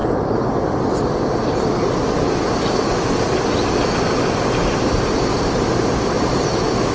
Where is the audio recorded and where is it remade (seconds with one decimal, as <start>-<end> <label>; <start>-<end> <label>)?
0.0-6.9 recorded